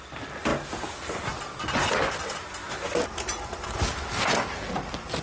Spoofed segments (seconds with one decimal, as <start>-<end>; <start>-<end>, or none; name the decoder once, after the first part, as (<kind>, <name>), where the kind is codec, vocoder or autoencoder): none